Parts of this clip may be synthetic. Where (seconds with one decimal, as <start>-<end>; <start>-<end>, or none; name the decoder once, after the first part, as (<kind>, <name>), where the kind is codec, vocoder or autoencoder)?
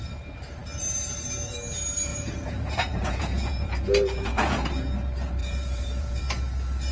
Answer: 2.1-4.7 (vocoder, Vocos); 5.4-6.2